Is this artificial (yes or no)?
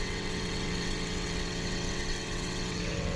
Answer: yes